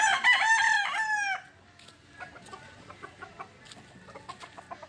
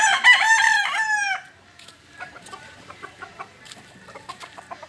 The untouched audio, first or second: first